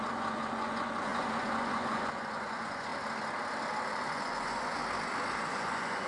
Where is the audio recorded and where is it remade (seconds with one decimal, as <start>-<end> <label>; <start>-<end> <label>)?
0.0-2.9 remade; 2.9-4.1 recorded; 4.1-4.8 remade; 4.8-5.4 recorded; 5.4-6.1 remade